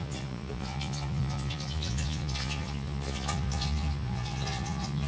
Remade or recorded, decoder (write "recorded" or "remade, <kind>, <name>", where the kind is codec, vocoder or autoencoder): remade, vocoder, Vocos